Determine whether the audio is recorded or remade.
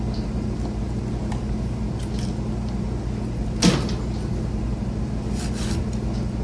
recorded